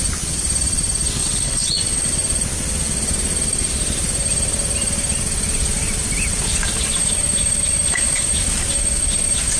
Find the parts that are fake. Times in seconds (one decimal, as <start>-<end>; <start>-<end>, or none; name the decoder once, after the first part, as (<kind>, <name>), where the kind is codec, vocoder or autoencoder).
1.2-2.1 (vocoder, WaveNeXt)